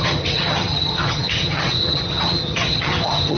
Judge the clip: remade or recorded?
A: remade